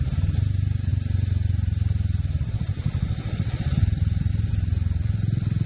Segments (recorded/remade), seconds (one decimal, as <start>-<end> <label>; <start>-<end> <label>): 0.0-5.7 recorded